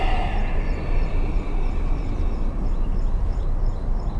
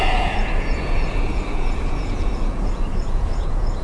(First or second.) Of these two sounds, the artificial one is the second